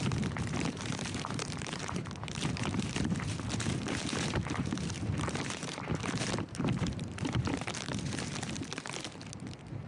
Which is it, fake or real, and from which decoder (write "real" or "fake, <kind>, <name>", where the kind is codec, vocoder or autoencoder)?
fake, vocoder, BigVGAN v2